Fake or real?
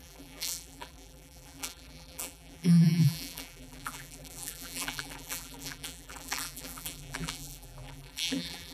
fake